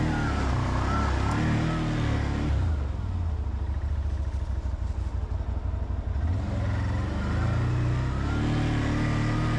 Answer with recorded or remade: recorded